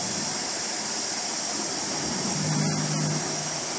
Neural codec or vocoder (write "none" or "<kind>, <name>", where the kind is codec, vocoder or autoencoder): none